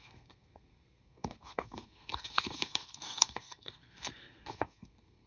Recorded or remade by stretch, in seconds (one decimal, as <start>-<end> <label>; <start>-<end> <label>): 0.0-5.3 remade